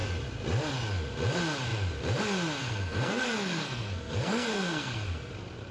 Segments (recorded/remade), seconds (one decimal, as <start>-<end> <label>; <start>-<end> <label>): 0.0-2.6 recorded; 2.6-5.3 remade; 5.3-5.7 recorded